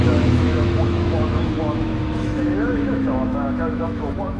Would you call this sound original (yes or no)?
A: no